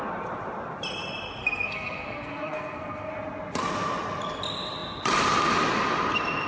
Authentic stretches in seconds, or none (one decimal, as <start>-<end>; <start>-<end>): 0.0-1.4; 3.1-6.5